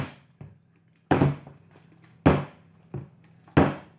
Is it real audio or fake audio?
real